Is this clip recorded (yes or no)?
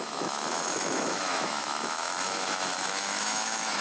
no